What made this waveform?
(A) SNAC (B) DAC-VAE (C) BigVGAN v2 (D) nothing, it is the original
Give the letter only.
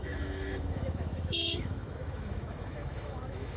B